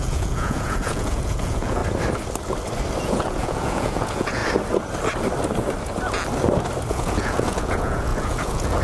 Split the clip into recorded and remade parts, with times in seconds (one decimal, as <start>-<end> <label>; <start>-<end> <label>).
0.0-1.8 remade; 1.8-3.0 recorded; 3.0-4.4 remade; 4.4-6.9 recorded; 6.9-8.8 remade